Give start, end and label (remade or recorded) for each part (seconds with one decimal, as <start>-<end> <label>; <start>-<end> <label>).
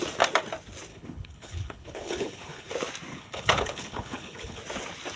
0.0-0.9 recorded; 0.9-2.7 remade; 2.7-3.1 recorded; 3.1-4.6 remade; 4.6-5.2 recorded